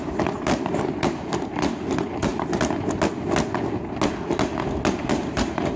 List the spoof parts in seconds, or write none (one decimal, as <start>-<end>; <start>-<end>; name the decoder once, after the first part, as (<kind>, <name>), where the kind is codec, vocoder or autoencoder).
0.0-2.3 (vocoder, BigVGAN v2); 4.9-5.8